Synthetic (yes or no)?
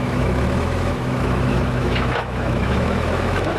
yes